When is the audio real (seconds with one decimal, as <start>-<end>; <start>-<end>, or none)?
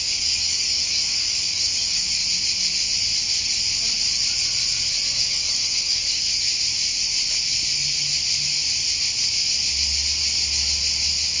2.2-5.1; 6.5-11.4